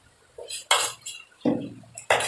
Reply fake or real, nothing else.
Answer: real